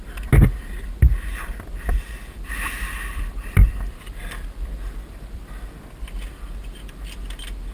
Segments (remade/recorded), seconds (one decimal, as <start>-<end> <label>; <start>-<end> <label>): 0.0-1.3 recorded; 1.3-5.4 remade; 5.4-7.7 recorded